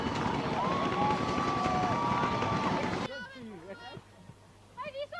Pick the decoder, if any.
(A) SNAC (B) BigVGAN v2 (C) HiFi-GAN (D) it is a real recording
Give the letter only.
D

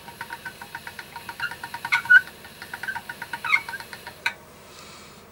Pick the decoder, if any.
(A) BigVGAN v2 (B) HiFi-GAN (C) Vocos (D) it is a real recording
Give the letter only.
A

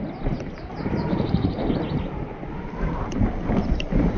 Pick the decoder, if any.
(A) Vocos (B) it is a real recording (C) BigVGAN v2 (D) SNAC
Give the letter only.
C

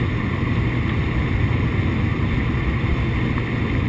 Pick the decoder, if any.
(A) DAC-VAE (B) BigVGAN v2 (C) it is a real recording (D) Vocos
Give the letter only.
C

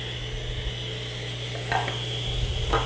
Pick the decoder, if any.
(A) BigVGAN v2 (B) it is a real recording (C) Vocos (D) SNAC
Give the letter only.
B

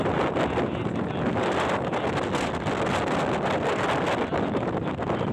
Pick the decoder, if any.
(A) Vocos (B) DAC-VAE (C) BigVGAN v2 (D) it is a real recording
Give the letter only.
D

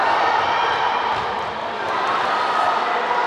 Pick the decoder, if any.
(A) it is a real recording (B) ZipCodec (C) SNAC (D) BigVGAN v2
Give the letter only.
D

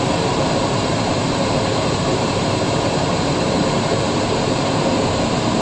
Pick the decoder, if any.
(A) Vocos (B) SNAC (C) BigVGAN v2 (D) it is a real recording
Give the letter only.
C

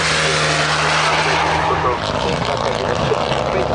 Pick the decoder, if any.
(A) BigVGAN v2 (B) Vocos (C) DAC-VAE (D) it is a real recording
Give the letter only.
D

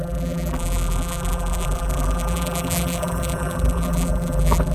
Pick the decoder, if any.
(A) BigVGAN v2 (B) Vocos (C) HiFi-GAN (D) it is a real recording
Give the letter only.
A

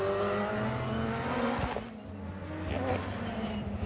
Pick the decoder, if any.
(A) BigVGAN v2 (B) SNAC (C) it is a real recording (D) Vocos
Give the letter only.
C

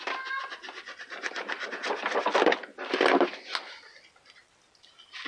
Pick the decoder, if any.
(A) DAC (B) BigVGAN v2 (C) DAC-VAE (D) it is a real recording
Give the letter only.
D